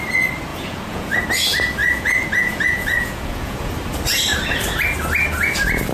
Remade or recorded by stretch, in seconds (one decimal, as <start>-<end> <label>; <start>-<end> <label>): 0.0-0.5 recorded; 0.5-1.2 remade; 1.2-1.8 recorded; 1.8-3.7 remade; 3.7-5.9 recorded